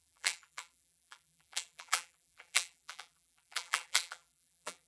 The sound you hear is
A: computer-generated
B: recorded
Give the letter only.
A